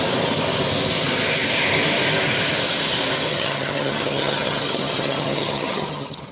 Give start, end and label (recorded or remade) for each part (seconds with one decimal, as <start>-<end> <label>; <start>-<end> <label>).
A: 0.0-3.3 recorded; 3.3-6.3 remade

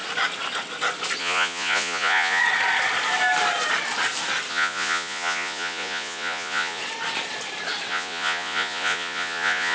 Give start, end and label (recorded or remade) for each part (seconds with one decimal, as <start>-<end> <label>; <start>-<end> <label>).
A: 0.0-1.2 recorded; 1.2-2.4 remade; 2.4-4.5 recorded; 4.5-6.8 remade; 6.8-7.9 recorded; 7.9-9.7 remade

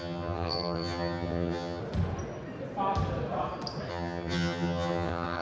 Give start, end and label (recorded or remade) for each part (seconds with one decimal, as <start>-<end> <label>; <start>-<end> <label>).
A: 0.0-1.8 remade; 1.8-3.9 recorded; 3.9-5.4 remade

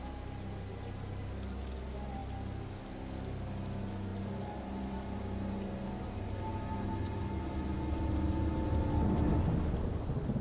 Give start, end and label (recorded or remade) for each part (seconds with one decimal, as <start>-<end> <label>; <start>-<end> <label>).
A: 0.0-10.4 recorded